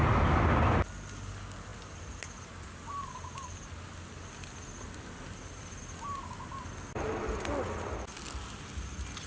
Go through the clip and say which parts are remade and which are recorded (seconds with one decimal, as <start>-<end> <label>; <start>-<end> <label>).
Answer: 0.0-9.3 recorded